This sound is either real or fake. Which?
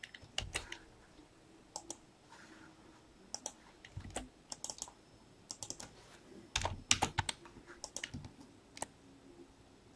real